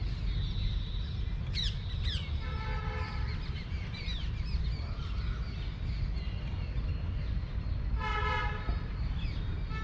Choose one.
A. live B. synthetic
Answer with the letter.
A